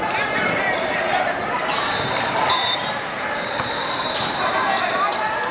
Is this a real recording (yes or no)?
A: no